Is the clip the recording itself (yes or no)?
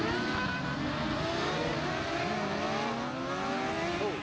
yes